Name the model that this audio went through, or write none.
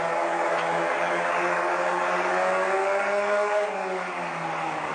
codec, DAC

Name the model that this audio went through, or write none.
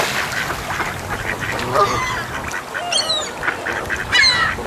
none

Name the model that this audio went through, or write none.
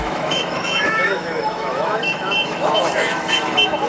autoencoder, DAC-VAE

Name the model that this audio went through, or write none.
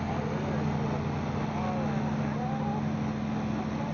none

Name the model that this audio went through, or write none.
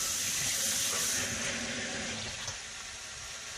vocoder, BigVGAN v2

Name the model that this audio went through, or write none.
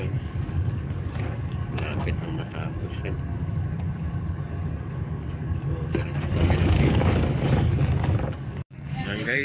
codec, DAC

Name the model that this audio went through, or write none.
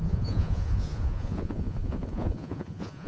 vocoder, Vocos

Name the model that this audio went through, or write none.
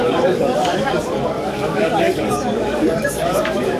codec, DAC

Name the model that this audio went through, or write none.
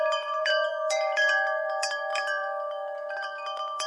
vocoder, BigVGAN v2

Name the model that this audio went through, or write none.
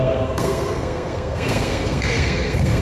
codec, SNAC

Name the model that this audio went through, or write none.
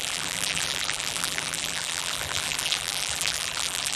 vocoder, BigVGAN v2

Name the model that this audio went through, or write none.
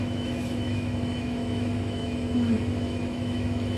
autoencoder, DAC-VAE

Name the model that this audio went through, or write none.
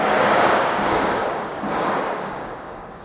codec, DAC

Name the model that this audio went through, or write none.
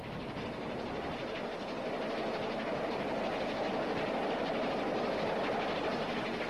none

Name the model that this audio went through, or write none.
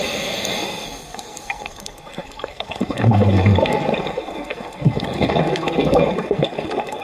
codec, SNAC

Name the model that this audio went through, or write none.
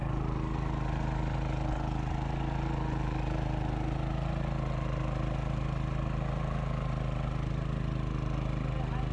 none